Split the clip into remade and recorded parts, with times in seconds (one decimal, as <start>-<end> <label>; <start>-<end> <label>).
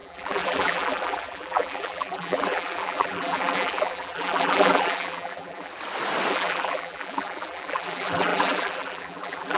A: 0.0-5.7 remade; 5.7-6.3 recorded; 6.3-9.6 remade